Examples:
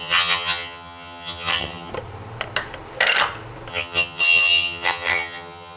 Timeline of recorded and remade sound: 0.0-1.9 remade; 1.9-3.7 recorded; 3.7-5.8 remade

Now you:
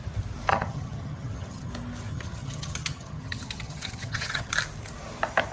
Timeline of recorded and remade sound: 0.0-0.5 recorded; 0.5-1.7 remade; 1.7-2.1 recorded; 2.1-4.5 remade; 4.5-5.5 recorded

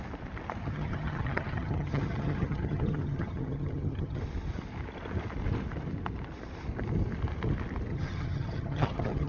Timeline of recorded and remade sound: 0.0-0.6 recorded; 0.6-4.2 remade; 4.2-7.9 recorded; 7.9-9.3 remade

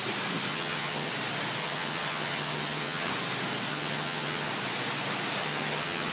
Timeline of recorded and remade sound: 0.0-0.5 recorded; 0.5-1.1 remade; 1.1-1.6 recorded; 1.6-3.1 remade; 3.1-3.7 recorded; 3.7-4.5 remade; 4.5-5.4 recorded; 5.4-6.1 remade

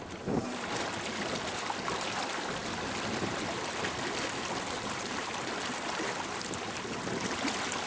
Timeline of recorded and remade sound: 0.0-7.9 recorded

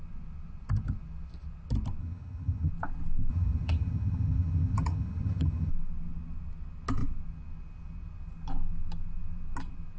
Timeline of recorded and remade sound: 0.0-2.0 recorded; 2.0-2.7 remade; 2.7-3.3 recorded; 3.3-5.7 remade; 5.7-10.0 recorded